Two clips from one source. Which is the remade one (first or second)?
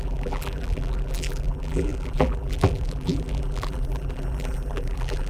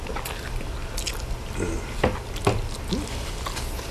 first